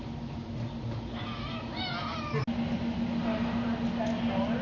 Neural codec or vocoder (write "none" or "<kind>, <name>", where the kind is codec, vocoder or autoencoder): none